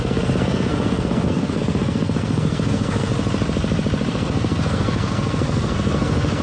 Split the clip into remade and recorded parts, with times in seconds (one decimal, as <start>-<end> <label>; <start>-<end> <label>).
0.0-3.1 remade; 3.1-4.1 recorded; 4.1-6.4 remade